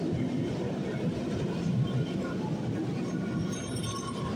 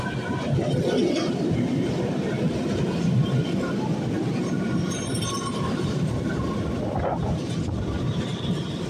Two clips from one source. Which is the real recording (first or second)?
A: first